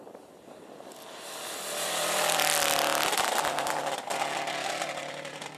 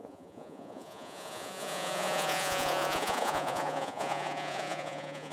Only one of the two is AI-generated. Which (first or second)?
second